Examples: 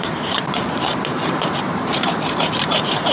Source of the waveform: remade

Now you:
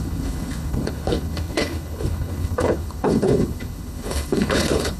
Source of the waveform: remade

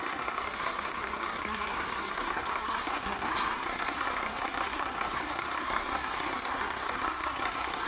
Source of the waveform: remade